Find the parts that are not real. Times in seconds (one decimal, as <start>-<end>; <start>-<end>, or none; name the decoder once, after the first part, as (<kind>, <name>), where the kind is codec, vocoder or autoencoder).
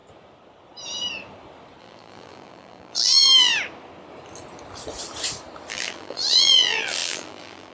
1.8-3.5 (vocoder, BigVGAN v2); 5.7-7.7